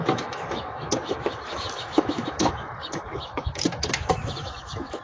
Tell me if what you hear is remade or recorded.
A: remade